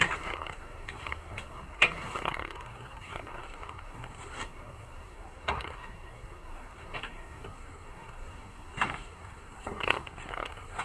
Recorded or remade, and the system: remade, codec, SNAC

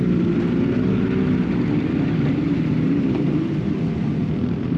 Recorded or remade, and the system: recorded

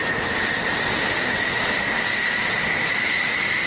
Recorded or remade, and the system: recorded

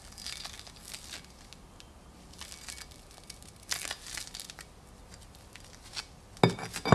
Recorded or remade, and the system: recorded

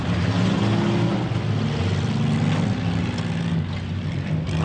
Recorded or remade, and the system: recorded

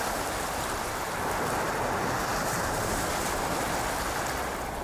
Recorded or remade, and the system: recorded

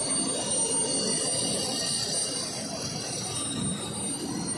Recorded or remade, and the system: recorded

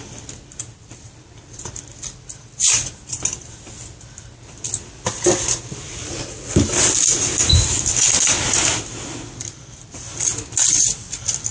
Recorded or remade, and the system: recorded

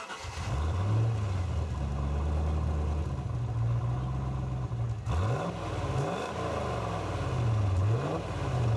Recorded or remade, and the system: recorded